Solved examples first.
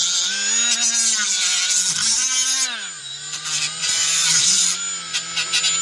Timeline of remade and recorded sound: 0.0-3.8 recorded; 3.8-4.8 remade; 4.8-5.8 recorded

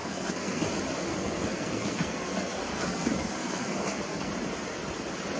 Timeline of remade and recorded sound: 0.0-0.7 remade; 0.7-1.1 recorded; 1.1-4.3 remade; 4.3-5.4 recorded